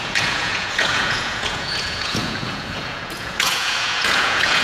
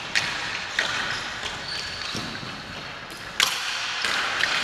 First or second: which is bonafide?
second